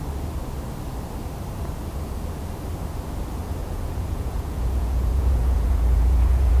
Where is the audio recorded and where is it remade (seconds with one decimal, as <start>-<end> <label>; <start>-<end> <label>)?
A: 0.0-3.6 recorded; 3.6-6.6 remade